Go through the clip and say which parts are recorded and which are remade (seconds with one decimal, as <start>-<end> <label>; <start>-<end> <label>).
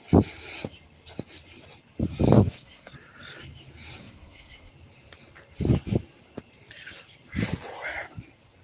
0.0-2.4 recorded; 2.4-2.9 remade; 2.9-4.0 recorded; 4.0-4.7 remade; 4.7-8.6 recorded